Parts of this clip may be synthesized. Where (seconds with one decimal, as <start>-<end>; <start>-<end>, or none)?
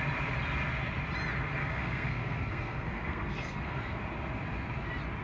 1.6-4.0